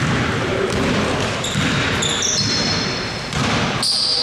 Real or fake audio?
real